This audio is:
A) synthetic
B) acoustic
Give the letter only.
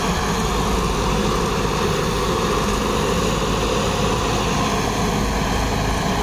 B